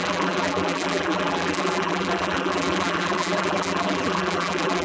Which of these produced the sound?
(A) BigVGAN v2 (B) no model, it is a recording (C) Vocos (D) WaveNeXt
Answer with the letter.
A